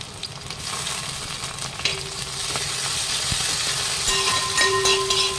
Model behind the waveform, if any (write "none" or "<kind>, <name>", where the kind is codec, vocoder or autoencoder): none